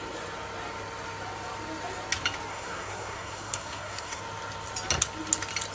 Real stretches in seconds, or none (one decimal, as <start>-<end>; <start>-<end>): 0.0-2.5; 4.2-5.7